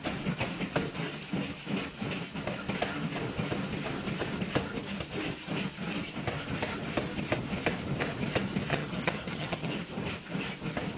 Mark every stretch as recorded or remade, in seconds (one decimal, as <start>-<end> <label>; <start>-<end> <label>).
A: 0.0-8.7 recorded; 8.7-9.7 remade; 9.7-11.0 recorded

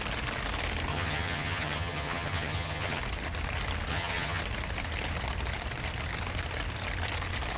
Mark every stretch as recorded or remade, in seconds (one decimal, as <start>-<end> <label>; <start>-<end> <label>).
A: 0.0-0.9 recorded; 0.9-3.0 remade; 3.0-3.9 recorded; 3.9-4.4 remade; 4.4-7.6 recorded

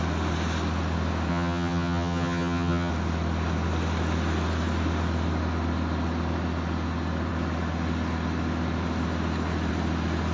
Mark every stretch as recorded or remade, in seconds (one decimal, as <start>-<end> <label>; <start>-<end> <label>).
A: 0.0-1.3 recorded; 1.3-2.9 remade; 2.9-10.3 recorded

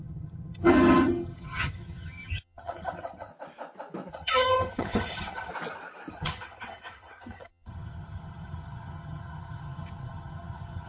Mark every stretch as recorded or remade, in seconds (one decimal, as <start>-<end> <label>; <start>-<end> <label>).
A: 0.0-3.3 remade; 3.3-4.1 recorded; 4.1-5.5 remade; 5.5-6.1 recorded; 6.1-10.9 remade

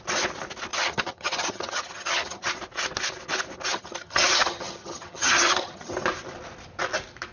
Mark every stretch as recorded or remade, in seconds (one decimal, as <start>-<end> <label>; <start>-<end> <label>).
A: 0.0-0.7 recorded; 0.7-2.5 remade; 2.5-3.7 recorded; 3.7-5.9 remade; 5.9-7.3 recorded

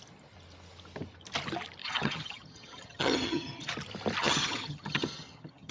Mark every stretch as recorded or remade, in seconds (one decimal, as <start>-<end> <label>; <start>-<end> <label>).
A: 0.0-1.8 recorded; 1.8-3.7 remade; 3.7-4.2 recorded; 4.2-5.7 remade